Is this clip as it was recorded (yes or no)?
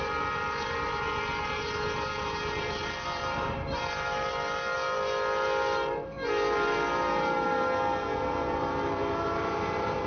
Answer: no